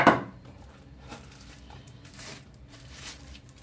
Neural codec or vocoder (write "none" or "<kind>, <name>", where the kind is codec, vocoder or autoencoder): vocoder, BigVGAN v2